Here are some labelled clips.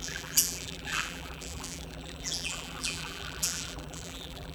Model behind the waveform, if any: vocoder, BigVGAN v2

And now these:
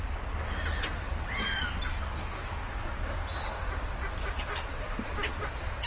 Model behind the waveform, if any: none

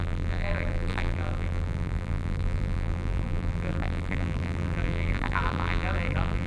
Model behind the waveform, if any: vocoder, BigVGAN v2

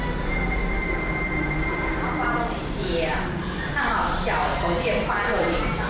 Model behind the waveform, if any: vocoder, BigVGAN v2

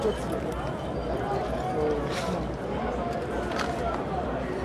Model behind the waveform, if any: none